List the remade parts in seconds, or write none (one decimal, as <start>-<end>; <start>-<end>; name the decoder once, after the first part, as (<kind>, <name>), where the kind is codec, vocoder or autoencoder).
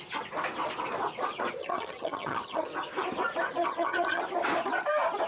1.6-2.7 (vocoder, HiFi-GAN); 3.6-4.2